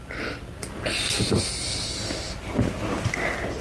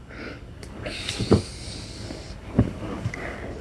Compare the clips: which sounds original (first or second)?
first